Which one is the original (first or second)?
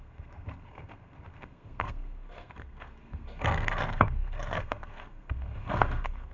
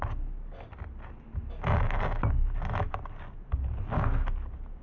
second